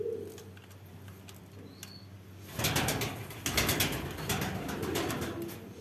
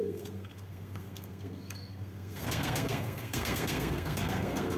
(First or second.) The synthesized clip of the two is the second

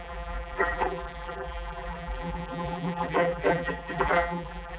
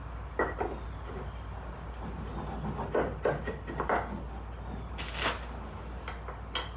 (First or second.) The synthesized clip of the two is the first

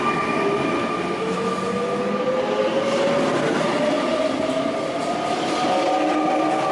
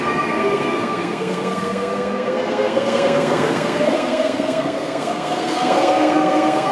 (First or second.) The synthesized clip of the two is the second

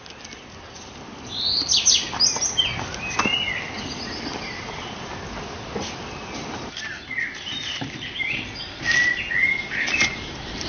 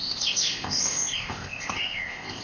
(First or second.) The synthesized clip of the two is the second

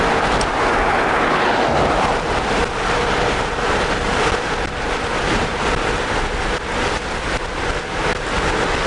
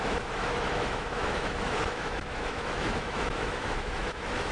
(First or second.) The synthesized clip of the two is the second